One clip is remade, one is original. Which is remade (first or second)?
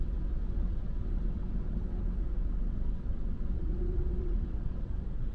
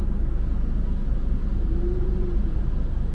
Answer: first